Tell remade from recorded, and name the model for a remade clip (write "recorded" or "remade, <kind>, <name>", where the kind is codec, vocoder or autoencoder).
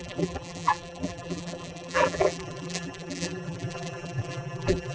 remade, vocoder, BigVGAN v2